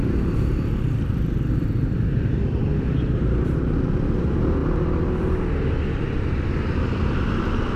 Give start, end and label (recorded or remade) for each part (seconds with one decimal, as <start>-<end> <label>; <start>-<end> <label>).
0.0-4.6 remade; 4.6-6.0 recorded; 6.0-7.8 remade